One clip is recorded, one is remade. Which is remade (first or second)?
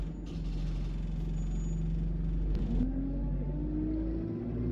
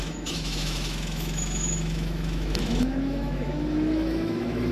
second